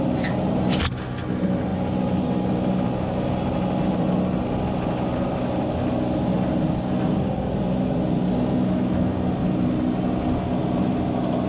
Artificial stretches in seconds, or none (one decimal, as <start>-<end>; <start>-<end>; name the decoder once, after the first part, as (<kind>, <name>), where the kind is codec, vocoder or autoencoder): none

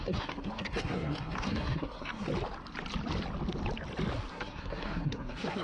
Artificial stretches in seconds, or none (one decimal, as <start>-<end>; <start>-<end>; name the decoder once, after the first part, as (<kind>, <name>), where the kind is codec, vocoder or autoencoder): 0.0-2.3 (codec, SNAC); 4.3-5.6

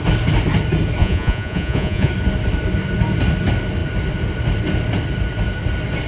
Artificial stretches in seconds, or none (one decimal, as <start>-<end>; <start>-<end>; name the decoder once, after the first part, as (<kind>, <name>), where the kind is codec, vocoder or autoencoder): 1.0-2.1 (vocoder, Vocos)

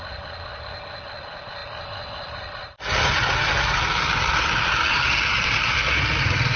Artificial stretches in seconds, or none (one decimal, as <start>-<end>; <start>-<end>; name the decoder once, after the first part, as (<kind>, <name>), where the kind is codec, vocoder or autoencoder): none

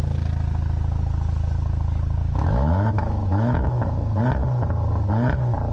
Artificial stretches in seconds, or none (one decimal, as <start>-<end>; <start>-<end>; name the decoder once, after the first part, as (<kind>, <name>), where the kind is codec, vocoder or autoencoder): 2.2-4.2 (autoencoder, DAC-VAE)

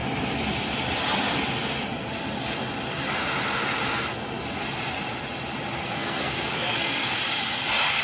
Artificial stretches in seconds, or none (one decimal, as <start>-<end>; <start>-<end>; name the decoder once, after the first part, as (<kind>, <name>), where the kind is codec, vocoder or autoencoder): 5.8-7.2 (codec, SNAC)

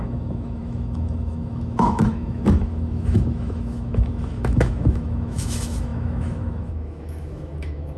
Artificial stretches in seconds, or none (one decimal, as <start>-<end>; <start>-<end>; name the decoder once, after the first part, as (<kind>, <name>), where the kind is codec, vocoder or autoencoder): 0.0-8.0 (autoencoder, DAC-VAE)